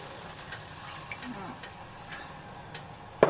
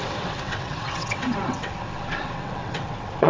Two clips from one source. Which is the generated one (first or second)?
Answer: second